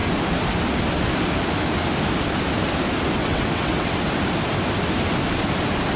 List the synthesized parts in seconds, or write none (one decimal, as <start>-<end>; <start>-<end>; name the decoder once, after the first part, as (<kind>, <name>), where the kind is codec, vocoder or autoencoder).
3.2-3.9 (vocoder, WaveNeXt)